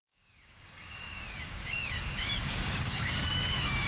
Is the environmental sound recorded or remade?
remade